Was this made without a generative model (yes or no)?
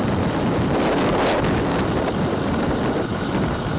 yes